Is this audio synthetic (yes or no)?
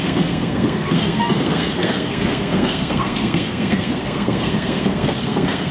yes